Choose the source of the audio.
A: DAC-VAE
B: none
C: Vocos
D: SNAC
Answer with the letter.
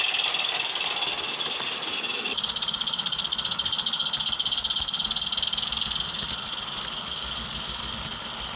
B